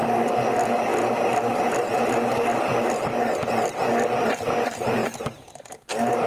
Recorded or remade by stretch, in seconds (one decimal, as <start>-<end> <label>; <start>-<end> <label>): 0.0-5.0 recorded; 5.0-5.8 remade; 5.8-6.3 recorded